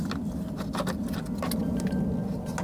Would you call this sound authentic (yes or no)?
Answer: yes